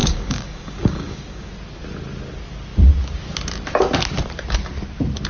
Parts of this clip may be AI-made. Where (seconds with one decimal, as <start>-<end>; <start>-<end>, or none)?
0.0-1.5